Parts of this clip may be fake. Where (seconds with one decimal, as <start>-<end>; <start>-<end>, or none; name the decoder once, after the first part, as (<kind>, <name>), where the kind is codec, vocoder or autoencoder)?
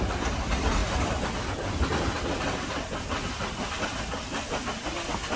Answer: none